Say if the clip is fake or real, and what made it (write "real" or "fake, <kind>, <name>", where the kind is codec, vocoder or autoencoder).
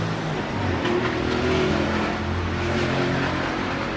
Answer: real